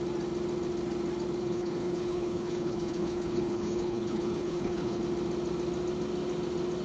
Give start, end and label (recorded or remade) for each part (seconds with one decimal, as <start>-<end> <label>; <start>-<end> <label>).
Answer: 0.0-1.4 recorded; 1.4-5.0 remade; 5.0-6.8 recorded